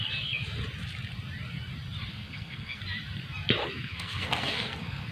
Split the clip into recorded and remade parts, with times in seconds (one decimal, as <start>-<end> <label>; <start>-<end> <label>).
0.0-2.1 recorded; 2.1-2.8 remade; 2.8-3.6 recorded; 3.6-5.1 remade